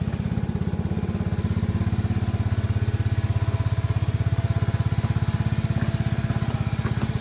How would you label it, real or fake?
real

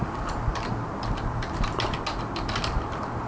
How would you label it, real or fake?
real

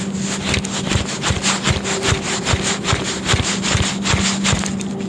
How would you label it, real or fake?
real